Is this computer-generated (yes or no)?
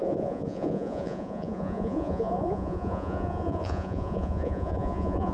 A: yes